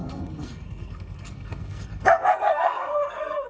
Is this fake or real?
fake